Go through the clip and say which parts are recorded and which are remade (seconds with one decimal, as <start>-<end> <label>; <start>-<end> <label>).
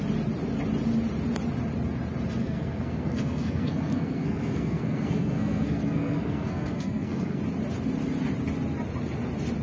0.0-2.4 recorded; 2.4-7.4 remade; 7.4-9.6 recorded